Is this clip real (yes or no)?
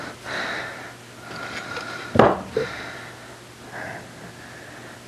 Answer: yes